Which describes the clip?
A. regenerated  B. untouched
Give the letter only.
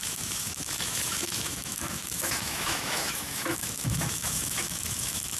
A